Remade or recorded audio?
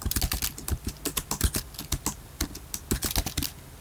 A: recorded